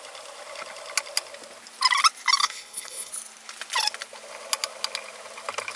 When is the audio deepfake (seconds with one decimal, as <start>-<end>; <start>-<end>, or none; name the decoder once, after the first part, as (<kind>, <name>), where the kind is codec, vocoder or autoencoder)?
2.4-3.1 (codec, HILCodec)